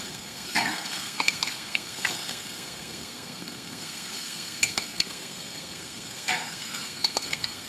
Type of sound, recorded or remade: remade